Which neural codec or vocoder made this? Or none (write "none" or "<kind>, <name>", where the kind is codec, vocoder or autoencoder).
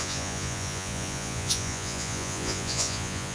vocoder, Vocos